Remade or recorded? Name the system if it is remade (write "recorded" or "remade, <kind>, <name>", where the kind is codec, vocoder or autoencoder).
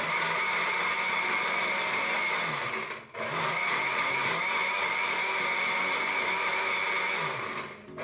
recorded